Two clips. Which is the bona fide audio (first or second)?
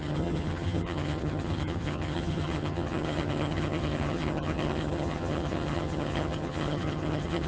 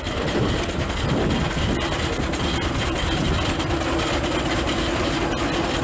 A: second